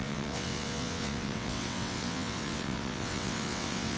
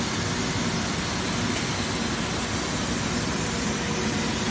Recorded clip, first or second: second